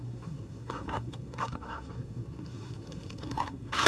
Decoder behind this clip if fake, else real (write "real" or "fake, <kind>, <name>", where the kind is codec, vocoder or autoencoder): fake, codec, SNAC